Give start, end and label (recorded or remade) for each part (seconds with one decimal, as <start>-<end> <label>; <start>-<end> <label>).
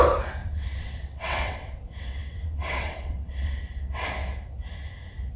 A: 0.0-0.4 recorded; 0.4-3.6 remade; 3.6-5.4 recorded